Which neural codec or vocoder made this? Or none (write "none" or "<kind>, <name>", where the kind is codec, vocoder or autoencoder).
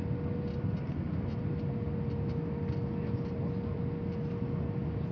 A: none